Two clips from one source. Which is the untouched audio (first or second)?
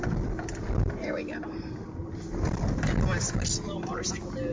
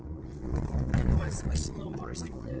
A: first